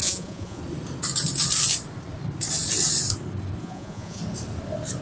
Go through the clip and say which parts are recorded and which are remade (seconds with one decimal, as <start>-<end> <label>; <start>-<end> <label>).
0.0-0.6 remade; 0.6-3.6 recorded; 3.6-4.2 remade; 4.2-5.0 recorded